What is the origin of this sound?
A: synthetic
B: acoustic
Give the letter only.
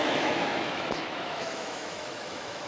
A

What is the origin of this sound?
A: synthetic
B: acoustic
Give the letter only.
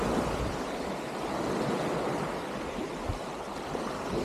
B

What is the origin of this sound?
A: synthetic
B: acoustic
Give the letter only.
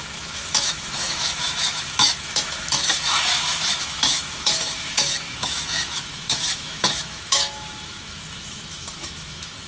A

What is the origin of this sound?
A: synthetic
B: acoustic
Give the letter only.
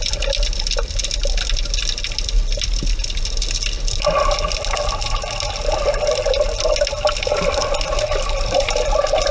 B